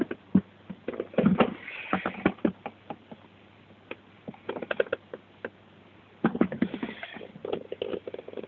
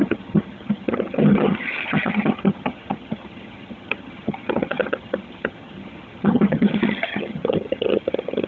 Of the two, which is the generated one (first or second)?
second